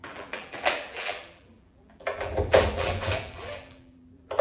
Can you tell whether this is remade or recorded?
remade